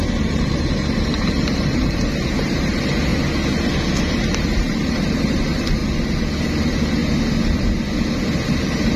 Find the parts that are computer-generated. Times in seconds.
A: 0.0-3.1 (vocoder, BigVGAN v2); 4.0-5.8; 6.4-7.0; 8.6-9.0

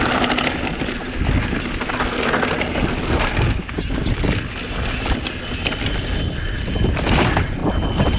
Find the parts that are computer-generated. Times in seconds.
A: none

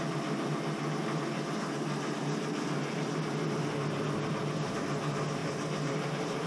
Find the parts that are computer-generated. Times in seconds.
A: 5.4-6.5 (vocoder, BigVGAN v2)